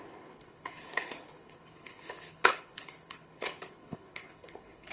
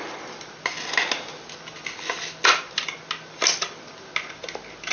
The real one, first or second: second